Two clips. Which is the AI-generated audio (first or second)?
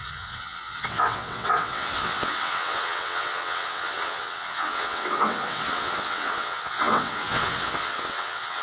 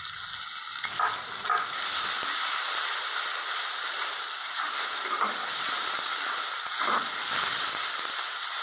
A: first